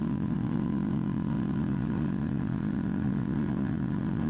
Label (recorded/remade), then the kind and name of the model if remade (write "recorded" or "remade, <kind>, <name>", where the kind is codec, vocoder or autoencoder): remade, vocoder, Vocos